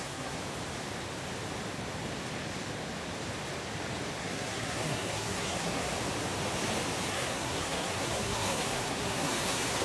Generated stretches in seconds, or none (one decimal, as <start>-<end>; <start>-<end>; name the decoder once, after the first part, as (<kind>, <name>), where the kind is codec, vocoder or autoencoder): 0.0-0.4 (codec, SNAC); 4.2-5.9; 7.1-9.8